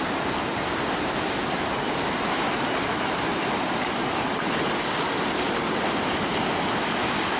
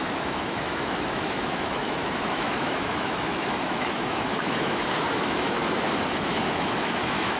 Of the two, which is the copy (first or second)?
second